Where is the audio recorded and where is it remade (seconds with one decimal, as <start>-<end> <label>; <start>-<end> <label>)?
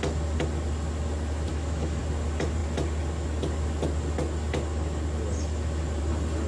0.0-1.5 recorded; 1.5-2.0 remade; 2.0-6.5 recorded